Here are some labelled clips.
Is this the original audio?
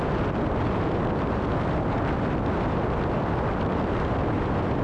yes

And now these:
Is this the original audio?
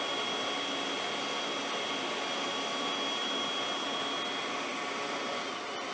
yes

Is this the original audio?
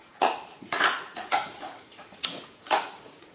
no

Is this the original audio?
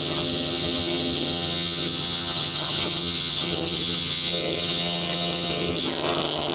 no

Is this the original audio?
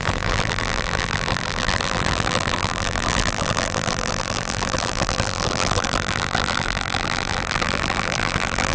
no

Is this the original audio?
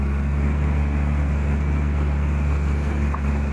no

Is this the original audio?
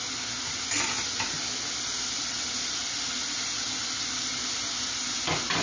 yes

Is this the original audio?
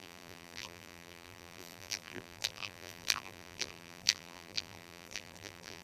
no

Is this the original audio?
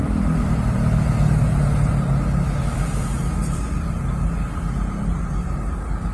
yes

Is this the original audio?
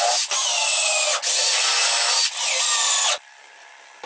yes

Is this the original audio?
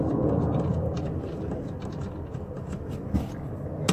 yes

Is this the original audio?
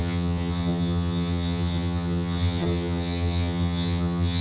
no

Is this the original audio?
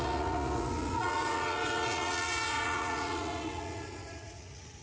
no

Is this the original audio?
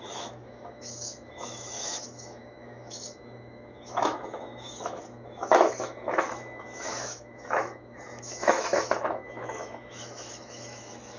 no